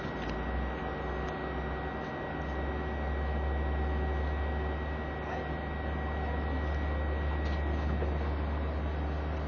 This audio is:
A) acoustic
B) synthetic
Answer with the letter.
A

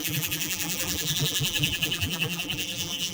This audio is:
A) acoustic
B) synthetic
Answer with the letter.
B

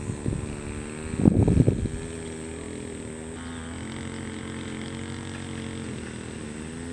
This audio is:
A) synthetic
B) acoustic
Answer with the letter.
B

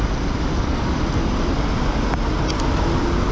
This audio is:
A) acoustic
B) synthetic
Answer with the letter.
A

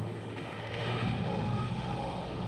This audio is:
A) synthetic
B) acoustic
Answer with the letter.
A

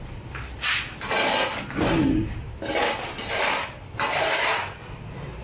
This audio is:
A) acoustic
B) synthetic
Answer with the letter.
A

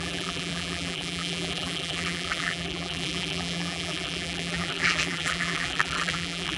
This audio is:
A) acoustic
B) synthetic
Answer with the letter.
B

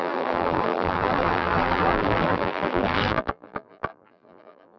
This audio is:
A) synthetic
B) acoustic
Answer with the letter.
A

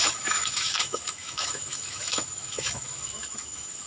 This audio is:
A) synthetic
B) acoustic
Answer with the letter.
A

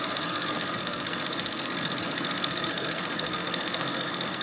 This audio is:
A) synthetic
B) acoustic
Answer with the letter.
A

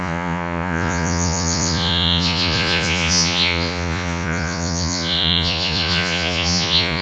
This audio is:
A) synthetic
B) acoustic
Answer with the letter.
A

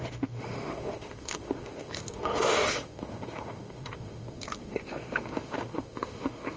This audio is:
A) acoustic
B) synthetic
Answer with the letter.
B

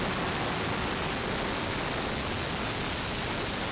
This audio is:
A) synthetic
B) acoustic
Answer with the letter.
B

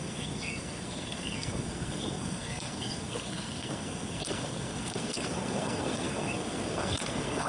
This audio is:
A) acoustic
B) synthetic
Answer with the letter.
B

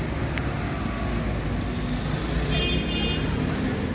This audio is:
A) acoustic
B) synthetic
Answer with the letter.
A